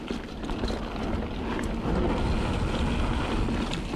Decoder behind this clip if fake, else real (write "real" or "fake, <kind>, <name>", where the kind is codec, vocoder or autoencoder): real